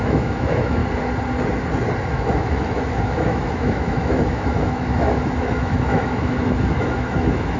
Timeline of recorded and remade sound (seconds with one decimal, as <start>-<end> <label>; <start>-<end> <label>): 0.0-0.8 remade; 0.8-2.1 recorded; 2.1-7.6 remade